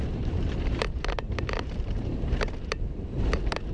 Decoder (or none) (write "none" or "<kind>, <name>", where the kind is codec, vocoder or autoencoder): vocoder, BigVGAN v2